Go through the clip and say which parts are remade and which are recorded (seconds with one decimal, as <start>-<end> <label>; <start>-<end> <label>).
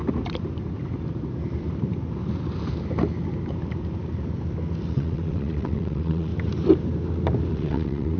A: 0.0-4.9 recorded; 4.9-6.3 remade; 6.3-7.5 recorded; 7.5-8.2 remade